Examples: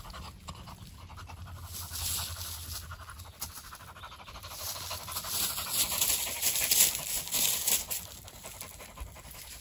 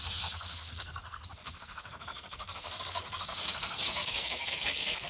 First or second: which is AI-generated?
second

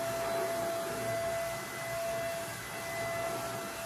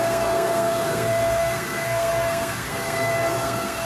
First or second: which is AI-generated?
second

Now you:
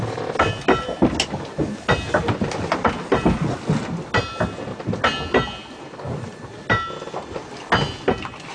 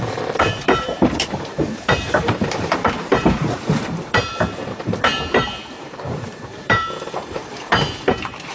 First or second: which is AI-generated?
second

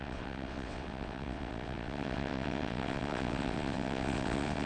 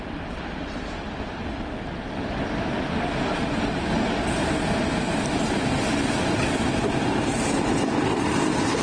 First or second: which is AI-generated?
first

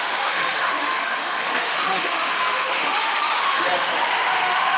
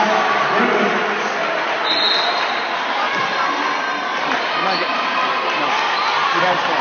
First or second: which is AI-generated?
first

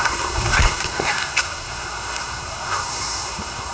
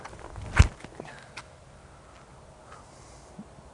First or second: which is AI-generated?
first